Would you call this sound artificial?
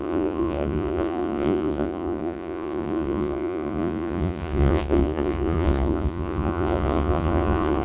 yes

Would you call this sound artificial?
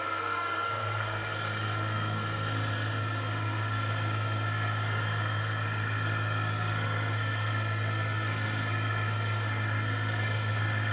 yes